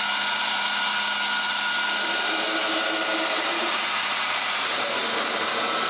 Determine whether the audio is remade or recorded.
recorded